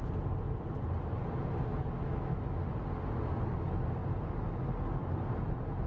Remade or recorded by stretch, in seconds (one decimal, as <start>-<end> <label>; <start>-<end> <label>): 0.0-1.7 recorded; 1.7-2.6 remade; 2.6-5.9 recorded